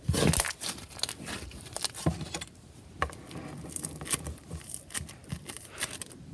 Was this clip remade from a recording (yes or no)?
no